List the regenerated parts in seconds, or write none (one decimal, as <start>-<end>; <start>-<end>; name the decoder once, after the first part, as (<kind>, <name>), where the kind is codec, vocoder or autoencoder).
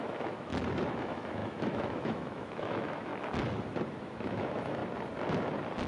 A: 0.0-0.5 (autoencoder, DAC-VAE); 1.0-3.1; 4.0-4.8